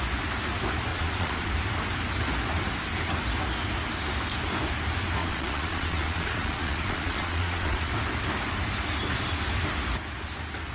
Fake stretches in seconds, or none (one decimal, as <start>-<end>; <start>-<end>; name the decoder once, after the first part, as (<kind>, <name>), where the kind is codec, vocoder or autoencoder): 0.9-1.5 (vocoder, Vocos); 5.2-7.9